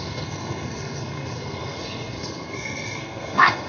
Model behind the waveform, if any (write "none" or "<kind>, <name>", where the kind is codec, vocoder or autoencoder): codec, SNAC